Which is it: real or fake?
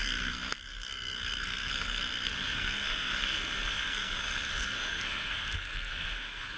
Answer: fake